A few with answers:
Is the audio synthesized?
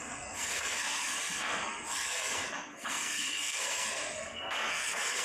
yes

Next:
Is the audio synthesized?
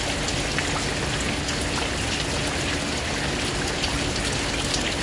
no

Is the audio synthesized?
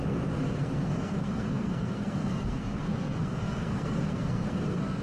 yes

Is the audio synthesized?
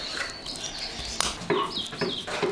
no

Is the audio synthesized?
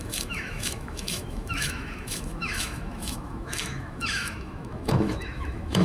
yes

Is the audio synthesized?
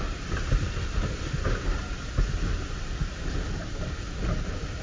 no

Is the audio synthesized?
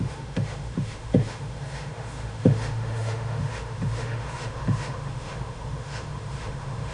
yes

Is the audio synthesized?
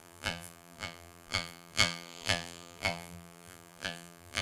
yes